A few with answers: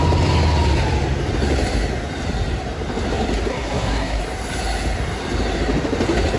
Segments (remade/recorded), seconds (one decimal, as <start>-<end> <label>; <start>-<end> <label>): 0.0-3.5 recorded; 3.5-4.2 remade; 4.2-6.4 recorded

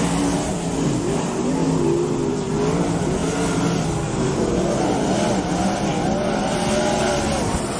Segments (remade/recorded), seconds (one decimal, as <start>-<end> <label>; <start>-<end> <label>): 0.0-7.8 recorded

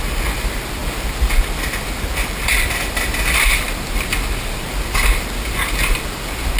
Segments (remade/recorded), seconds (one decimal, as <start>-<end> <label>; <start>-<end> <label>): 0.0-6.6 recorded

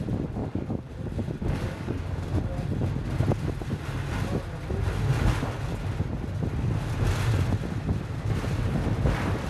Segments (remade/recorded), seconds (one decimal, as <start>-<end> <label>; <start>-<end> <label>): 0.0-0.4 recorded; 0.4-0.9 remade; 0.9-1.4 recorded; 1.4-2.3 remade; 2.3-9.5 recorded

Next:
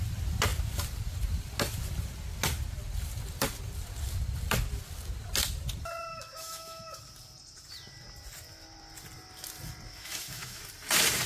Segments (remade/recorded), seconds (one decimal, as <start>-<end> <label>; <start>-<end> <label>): 0.0-6.1 recorded; 6.1-7.0 remade; 7.0-9.9 recorded; 9.9-10.6 remade; 10.6-11.3 recorded

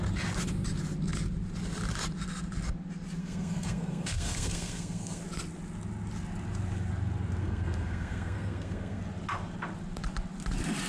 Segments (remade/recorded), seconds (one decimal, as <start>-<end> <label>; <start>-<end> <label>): 0.0-3.2 recorded; 3.2-5.2 remade; 5.2-7.4 recorded; 7.4-9.0 remade; 9.0-10.9 recorded